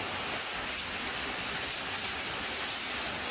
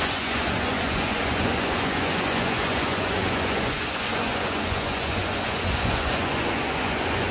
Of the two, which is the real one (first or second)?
first